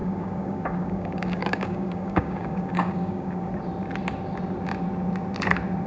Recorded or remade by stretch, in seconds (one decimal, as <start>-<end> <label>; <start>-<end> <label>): 0.0-3.5 remade; 3.5-5.9 recorded

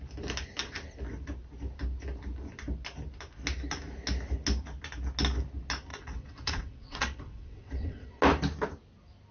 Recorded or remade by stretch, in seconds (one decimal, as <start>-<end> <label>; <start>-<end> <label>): 0.0-5.9 recorded; 5.9-8.2 remade; 8.2-9.3 recorded

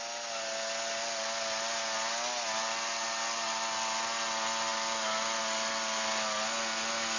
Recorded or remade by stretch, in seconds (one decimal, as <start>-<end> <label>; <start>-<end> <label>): 0.0-7.2 recorded

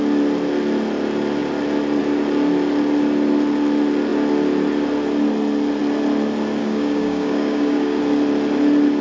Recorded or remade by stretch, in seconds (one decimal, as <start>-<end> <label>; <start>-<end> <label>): 0.0-6.6 recorded; 6.6-8.0 remade; 8.0-9.0 recorded

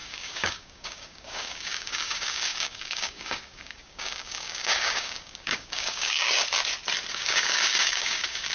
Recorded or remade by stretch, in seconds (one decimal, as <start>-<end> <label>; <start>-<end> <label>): 0.0-6.4 remade; 6.4-7.1 recorded; 7.1-8.5 remade

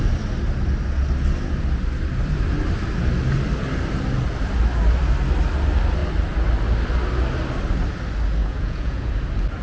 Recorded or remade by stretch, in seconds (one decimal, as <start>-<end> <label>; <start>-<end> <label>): 0.0-8.4 recorded; 8.4-9.1 remade; 9.1-9.6 recorded

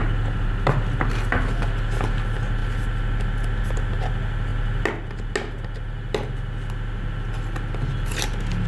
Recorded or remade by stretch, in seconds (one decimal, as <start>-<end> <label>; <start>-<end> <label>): 0.0-8.7 recorded

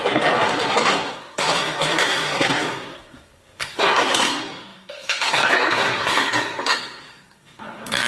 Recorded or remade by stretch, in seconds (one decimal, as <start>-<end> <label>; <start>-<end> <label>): 0.0-8.1 remade